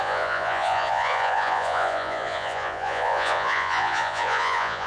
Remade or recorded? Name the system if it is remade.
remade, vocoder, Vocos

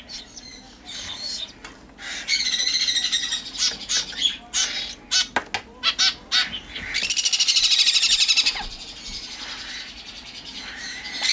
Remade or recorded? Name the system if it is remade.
recorded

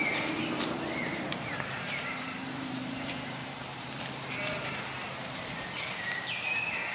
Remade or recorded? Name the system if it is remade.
remade, vocoder, BigVGAN v2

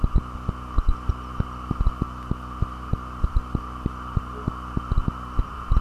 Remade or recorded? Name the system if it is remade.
remade, vocoder, BigVGAN v2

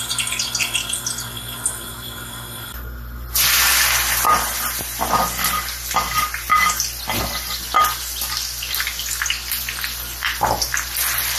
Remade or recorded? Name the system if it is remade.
recorded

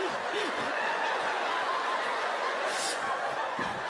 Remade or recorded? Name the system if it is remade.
remade, vocoder, Vocos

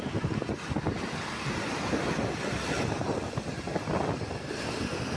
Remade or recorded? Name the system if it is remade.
recorded